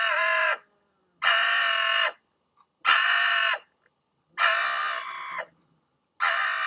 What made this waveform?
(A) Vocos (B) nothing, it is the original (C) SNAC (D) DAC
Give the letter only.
B